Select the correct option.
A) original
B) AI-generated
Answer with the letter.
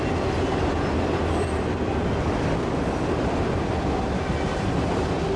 A